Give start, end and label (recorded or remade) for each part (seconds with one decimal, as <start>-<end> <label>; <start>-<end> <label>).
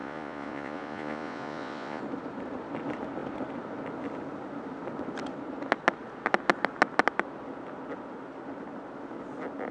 0.0-2.0 remade; 2.0-9.7 recorded